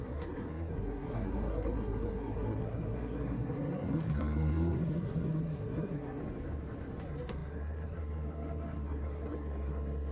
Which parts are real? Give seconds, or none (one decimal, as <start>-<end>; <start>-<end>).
6.2-7.0